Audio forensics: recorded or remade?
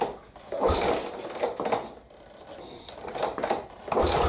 recorded